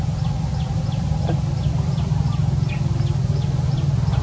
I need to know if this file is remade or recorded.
recorded